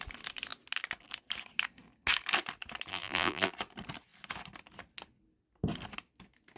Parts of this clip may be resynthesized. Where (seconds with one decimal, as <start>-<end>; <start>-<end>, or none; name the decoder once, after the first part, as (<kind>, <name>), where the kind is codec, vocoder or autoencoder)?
2.9-3.5 (vocoder, BigVGAN v2)